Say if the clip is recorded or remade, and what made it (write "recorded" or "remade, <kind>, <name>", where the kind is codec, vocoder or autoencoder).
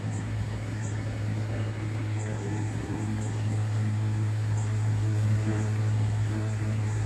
remade, codec, SNAC